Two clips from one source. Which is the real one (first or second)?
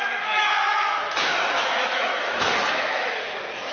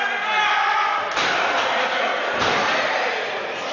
second